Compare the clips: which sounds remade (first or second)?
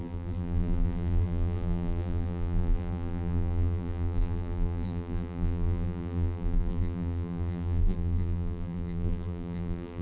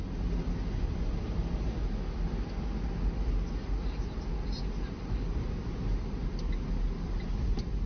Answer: first